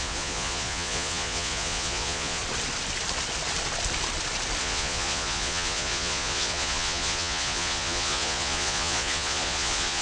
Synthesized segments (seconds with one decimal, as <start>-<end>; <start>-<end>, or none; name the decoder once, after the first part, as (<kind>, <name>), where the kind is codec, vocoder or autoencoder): 0.0-2.4 (vocoder, Vocos); 4.6-10.0